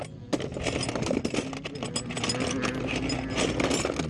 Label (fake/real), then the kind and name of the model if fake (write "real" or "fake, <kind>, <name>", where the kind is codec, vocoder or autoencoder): real